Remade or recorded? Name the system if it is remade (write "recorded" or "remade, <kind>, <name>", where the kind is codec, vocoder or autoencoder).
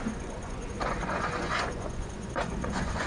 remade, vocoder, Vocos